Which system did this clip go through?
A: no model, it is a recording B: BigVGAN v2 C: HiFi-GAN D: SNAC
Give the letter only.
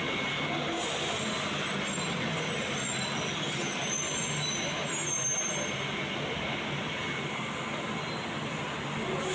A